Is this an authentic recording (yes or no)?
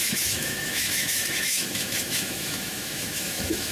no